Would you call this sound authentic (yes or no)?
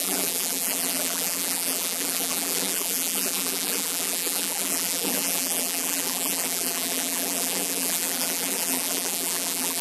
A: no